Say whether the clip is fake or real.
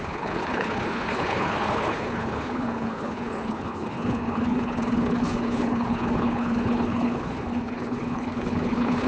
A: fake